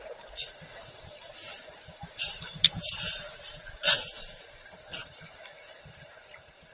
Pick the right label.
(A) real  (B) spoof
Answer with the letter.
B